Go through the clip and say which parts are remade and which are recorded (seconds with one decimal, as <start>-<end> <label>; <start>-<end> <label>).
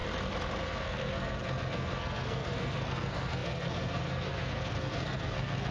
0.0-0.6 recorded; 0.6-5.7 remade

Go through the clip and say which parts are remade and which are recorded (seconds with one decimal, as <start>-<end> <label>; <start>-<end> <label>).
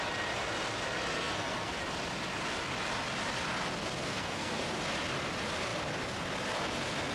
0.0-1.1 recorded; 1.1-1.8 remade; 1.8-4.0 recorded; 4.0-4.6 remade; 4.6-7.1 recorded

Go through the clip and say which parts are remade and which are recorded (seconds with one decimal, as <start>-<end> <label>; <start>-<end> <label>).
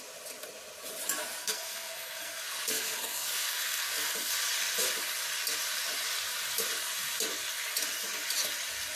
0.0-1.4 recorded; 1.4-4.3 remade; 4.3-9.0 recorded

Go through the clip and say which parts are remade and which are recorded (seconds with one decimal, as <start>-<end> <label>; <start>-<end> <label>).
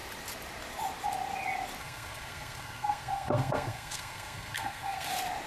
0.0-1.8 recorded; 1.8-5.1 remade; 5.1-5.5 recorded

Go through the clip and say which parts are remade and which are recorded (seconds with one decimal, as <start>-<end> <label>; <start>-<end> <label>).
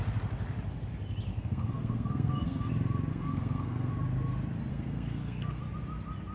0.0-1.3 recorded; 1.3-2.7 remade; 2.7-3.1 recorded; 3.1-3.9 remade; 3.9-4.7 recorded; 4.7-5.6 remade; 5.6-6.3 recorded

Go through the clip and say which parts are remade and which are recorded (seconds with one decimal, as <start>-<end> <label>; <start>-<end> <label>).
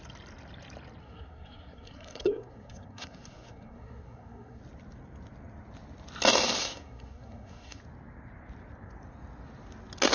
0.0-1.0 recorded; 1.0-4.6 remade; 4.6-6.6 recorded; 6.6-7.8 remade; 7.8-10.1 recorded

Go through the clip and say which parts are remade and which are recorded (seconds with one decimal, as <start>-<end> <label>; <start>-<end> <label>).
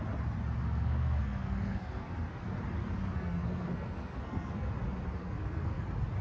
0.0-0.6 recorded; 0.6-2.4 remade; 2.4-3.0 recorded; 3.0-4.7 remade; 4.7-5.2 recorded; 5.2-5.8 remade; 5.8-6.2 recorded